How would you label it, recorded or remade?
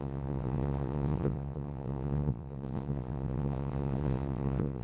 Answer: remade